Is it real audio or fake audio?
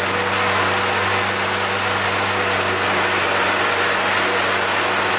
real